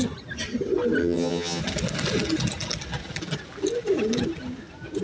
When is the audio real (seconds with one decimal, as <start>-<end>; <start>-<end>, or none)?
0.0-1.0; 1.6-5.0